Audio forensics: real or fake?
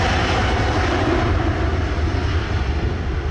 real